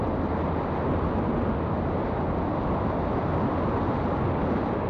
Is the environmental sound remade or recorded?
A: recorded